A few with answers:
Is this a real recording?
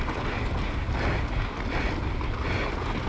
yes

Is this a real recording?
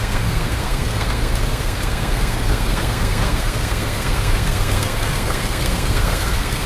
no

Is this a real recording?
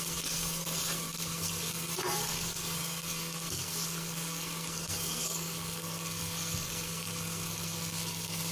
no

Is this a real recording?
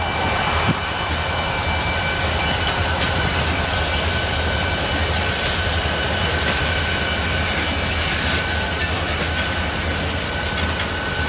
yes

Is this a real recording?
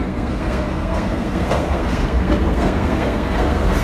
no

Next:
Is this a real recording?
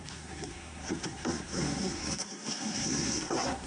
no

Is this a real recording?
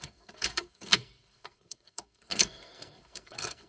no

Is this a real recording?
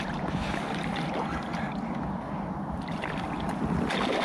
yes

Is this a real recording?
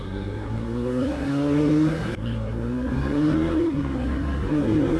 no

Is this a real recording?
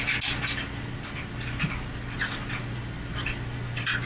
yes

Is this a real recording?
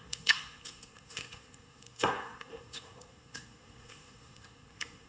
no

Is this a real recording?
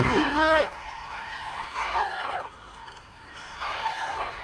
no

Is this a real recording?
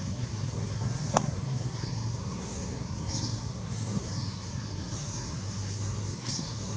no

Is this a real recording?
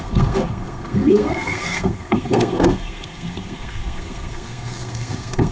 no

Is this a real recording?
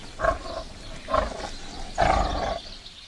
yes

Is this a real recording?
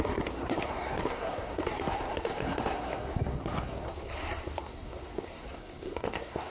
no